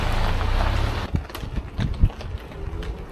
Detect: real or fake real